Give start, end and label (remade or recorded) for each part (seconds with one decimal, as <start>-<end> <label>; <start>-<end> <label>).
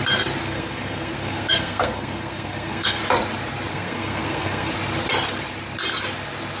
0.0-0.4 recorded; 0.4-3.0 remade; 3.0-3.7 recorded; 3.7-4.7 remade; 4.7-6.6 recorded